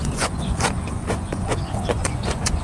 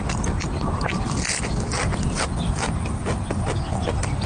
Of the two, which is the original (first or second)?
second